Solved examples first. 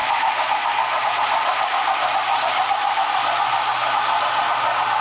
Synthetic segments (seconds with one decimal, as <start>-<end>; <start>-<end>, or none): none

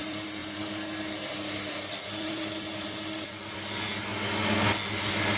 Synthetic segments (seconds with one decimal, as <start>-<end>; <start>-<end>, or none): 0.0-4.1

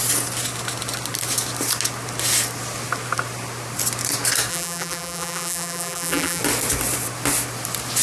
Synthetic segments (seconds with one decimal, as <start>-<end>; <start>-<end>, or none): 4.5-6.4

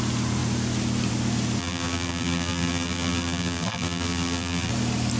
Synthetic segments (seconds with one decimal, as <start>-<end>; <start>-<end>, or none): 1.6-4.7

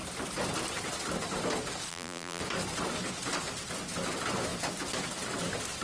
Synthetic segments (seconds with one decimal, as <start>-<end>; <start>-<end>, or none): 1.9-2.4